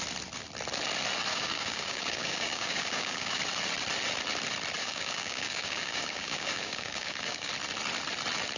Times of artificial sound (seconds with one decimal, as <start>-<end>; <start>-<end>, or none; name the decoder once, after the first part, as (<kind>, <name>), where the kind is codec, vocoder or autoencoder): 1.3-3.4 (codec, DAC); 4.8-7.5